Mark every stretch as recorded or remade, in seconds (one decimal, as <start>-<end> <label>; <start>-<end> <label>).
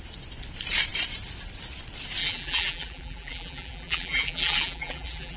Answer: 0.0-2.2 recorded; 2.2-5.4 remade